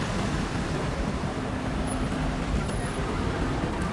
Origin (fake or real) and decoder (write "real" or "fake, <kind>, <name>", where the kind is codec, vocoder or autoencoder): real